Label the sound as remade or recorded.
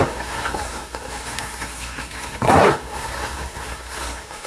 remade